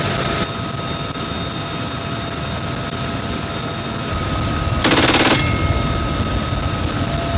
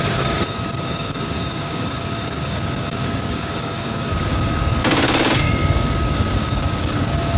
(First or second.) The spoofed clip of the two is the second